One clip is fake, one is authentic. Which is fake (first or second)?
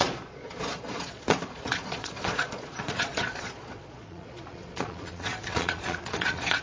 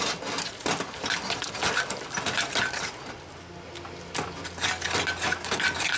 first